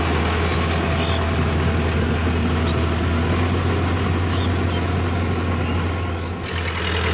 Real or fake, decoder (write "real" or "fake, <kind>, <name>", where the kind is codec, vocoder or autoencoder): real